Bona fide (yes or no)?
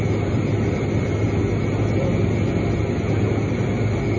yes